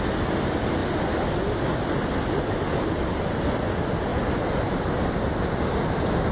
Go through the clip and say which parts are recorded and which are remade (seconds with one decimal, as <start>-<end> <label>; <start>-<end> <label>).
0.0-6.3 recorded